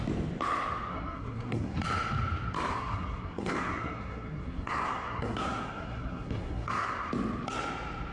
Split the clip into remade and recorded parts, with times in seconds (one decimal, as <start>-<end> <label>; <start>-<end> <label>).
0.0-0.9 recorded; 0.9-1.8 remade; 1.8-2.7 recorded; 2.7-7.1 remade; 7.1-8.1 recorded